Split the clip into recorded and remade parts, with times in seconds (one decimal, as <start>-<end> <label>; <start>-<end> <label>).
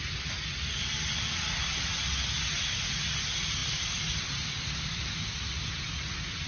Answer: 0.0-6.5 recorded